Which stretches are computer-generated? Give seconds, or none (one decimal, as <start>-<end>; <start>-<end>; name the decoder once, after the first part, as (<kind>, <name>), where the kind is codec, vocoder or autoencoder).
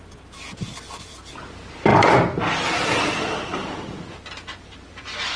none